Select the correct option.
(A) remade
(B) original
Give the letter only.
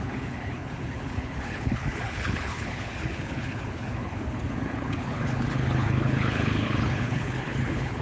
A